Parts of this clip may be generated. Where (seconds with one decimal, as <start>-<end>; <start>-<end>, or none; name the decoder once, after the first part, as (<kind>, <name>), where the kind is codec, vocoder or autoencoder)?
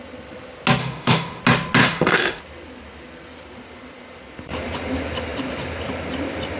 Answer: 0.8-1.4 (autoencoder, DAC-VAE); 1.8-2.4